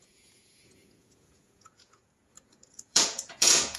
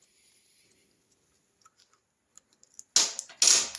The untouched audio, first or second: second